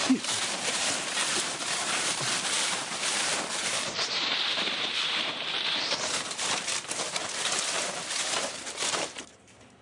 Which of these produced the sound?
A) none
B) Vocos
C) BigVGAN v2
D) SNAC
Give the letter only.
C